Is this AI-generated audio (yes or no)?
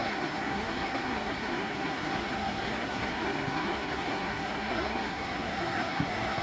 yes